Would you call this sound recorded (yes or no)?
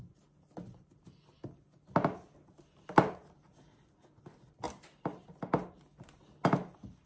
yes